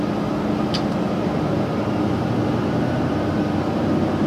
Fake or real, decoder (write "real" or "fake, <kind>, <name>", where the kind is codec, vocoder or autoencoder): real